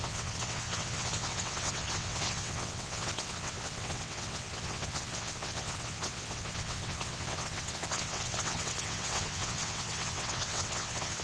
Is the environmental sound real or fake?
fake